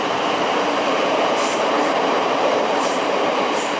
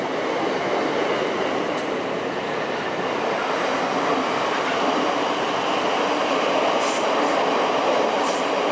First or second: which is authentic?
second